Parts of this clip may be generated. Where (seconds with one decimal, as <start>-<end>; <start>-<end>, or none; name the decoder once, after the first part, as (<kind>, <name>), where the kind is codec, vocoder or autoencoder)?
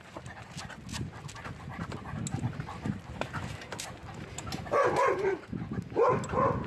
none